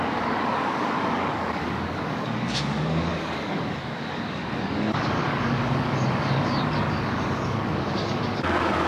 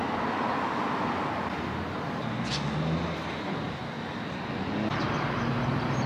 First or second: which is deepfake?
first